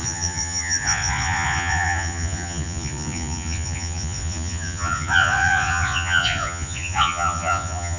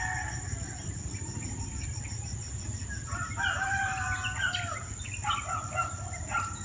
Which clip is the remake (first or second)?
first